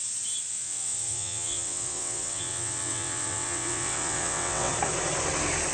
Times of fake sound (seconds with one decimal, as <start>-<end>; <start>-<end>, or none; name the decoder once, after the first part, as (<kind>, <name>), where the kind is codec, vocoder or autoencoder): 0.5-4.7 (vocoder, WaveNeXt)